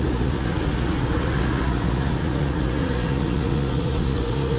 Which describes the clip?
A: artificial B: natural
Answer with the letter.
A